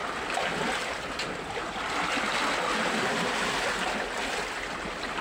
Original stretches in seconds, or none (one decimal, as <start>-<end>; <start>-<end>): 0.0-5.2